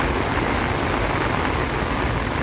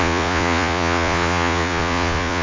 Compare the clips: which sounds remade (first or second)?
second